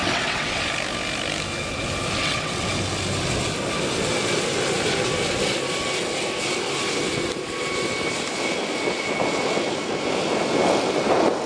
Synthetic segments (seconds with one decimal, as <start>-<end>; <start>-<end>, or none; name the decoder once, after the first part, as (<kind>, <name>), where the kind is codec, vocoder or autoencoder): 0.0-0.6 (vocoder, WaveNeXt); 2.2-2.7